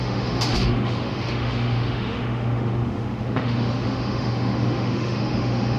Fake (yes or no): yes